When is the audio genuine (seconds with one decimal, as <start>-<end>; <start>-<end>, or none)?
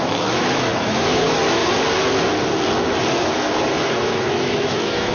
1.6-3.2